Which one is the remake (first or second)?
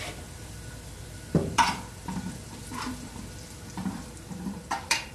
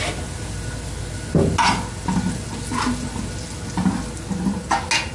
first